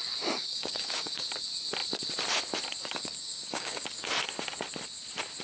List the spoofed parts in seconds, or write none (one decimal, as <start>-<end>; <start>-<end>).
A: 0.4-1.3; 2.8-4.1